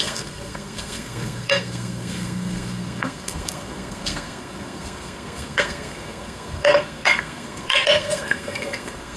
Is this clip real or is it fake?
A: fake